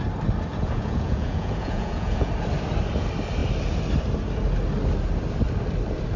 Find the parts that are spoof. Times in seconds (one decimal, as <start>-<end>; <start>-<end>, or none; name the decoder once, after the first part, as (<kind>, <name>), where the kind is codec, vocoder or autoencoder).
0.5-2.3 (vocoder, Vocos)